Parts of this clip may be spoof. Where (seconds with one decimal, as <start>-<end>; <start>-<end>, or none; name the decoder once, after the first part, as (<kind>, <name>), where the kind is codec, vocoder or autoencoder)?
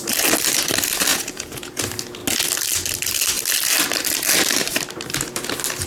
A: 1.1-1.8 (vocoder, Vocos)